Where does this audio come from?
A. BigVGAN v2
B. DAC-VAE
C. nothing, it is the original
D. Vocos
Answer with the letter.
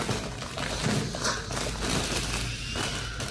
C